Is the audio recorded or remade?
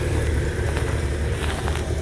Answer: recorded